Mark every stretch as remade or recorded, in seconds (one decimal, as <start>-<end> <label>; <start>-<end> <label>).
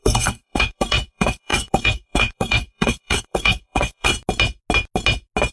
0.0-4.1 remade; 4.1-5.5 recorded